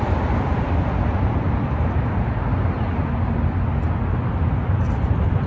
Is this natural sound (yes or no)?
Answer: yes